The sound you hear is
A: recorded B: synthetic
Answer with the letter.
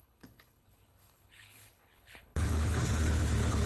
B